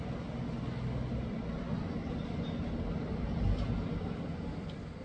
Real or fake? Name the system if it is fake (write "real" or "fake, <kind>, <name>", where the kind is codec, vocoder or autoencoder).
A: real